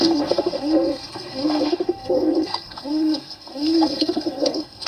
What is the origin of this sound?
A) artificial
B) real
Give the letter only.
A